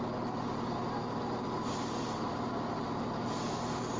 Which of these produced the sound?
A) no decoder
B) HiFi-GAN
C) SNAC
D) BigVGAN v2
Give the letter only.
A